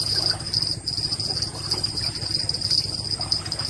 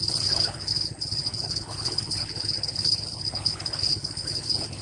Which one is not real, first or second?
second